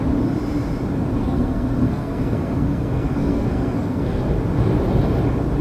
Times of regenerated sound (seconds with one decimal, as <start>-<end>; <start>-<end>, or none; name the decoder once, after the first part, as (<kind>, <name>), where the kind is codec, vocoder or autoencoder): 1.2-4.2 (codec, SNAC)